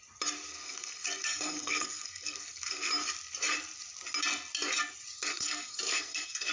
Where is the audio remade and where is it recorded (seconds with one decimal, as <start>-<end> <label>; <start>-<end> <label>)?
0.0-0.5 recorded; 0.5-2.9 remade; 2.9-5.3 recorded; 5.3-6.5 remade